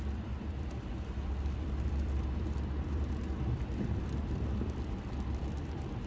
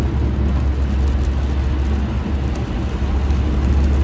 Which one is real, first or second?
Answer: second